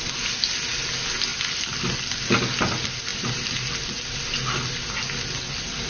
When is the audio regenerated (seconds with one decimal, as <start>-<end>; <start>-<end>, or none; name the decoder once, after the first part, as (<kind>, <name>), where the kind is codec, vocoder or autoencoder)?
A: none